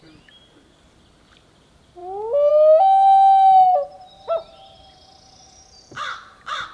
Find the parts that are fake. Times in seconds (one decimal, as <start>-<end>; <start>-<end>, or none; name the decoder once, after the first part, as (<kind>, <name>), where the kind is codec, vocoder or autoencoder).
none